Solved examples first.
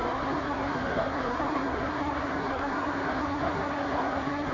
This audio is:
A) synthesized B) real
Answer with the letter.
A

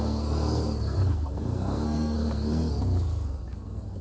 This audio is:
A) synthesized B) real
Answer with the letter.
A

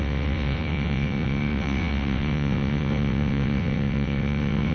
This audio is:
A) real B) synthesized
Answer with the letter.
B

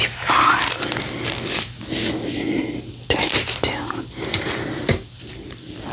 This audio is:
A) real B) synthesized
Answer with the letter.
A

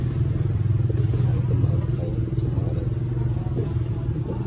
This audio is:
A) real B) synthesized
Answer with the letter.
A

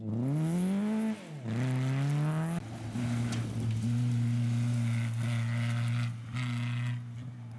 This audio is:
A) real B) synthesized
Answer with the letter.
A